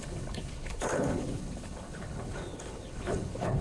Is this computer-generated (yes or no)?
yes